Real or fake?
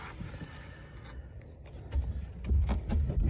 real